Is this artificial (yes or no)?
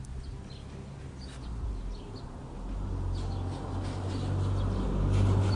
no